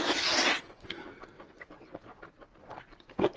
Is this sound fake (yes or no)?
no